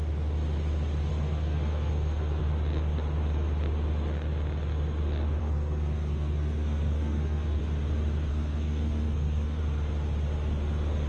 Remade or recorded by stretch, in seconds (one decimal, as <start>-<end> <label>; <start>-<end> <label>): 0.0-1.1 recorded; 1.1-2.4 remade; 2.4-5.4 recorded; 5.4-7.6 remade; 7.6-8.3 recorded; 8.3-9.6 remade; 9.6-11.1 recorded